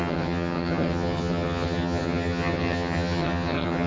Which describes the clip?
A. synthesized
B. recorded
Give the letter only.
A